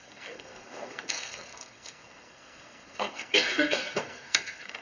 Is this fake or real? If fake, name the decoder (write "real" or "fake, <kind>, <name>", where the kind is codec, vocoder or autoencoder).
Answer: fake, codec, SNAC